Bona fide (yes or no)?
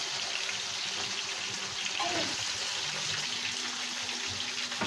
yes